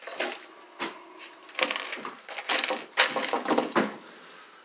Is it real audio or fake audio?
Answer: real